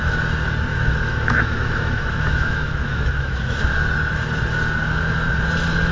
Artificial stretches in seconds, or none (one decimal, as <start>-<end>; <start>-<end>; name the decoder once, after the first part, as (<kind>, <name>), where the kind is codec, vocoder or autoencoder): 0.7-3.6 (autoencoder, DAC-VAE)